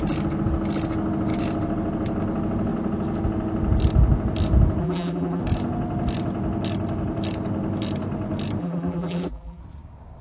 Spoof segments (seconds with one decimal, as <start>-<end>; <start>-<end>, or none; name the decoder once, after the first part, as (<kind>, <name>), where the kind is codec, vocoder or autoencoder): 4.8-5.4 (vocoder, BigVGAN v2); 8.6-9.6